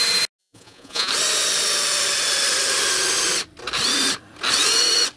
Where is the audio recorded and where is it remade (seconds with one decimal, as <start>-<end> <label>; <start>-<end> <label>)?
0.0-0.4 recorded; 0.4-1.1 remade; 1.1-5.2 recorded